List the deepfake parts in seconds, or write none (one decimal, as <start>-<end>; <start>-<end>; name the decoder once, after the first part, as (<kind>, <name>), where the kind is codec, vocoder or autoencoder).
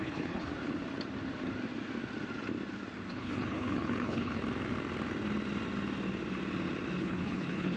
0.0-0.5 (codec, HILCodec); 3.1-4.4; 7.0-7.8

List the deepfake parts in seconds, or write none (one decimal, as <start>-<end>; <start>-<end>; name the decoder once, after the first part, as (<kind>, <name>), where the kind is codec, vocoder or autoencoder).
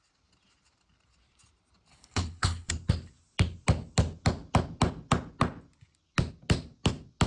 1.9-2.7 (codec, HILCodec)